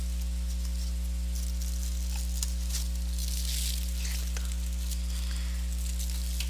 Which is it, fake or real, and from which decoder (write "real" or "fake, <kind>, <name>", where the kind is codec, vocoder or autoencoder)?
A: real